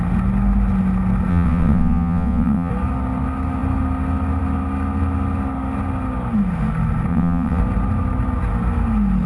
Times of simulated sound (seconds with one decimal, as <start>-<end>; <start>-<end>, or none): 1.3-2.7; 7.1-7.6